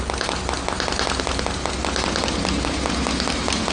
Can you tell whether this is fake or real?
real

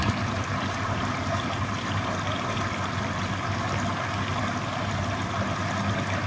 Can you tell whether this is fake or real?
real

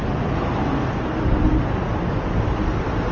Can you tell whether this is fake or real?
real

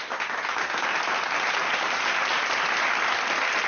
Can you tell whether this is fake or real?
real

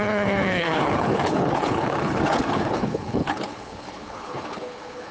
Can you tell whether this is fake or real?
fake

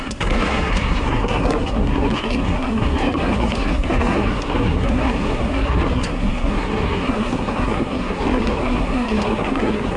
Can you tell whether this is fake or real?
fake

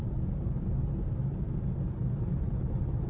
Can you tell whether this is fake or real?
real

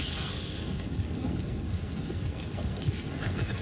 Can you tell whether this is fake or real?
fake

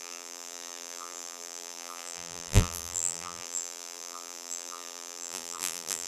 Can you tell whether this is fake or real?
fake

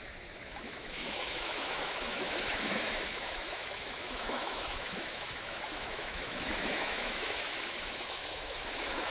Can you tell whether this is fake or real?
fake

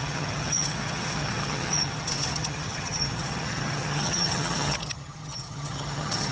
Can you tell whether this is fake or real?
fake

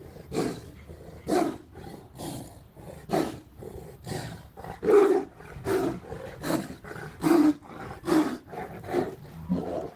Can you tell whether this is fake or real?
real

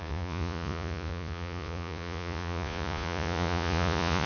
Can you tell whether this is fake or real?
fake